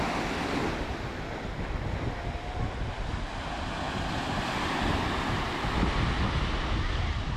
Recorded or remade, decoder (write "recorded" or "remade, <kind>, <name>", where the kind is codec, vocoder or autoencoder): recorded